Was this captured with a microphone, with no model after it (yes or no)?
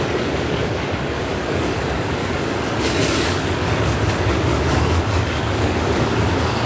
no